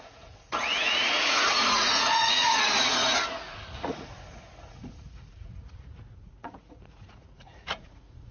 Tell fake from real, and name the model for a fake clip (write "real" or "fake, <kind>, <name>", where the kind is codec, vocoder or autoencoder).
fake, vocoder, Vocos